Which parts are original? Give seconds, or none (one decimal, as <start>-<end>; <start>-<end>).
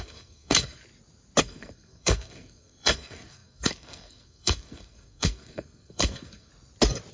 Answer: 0.8-1.4; 6.5-7.1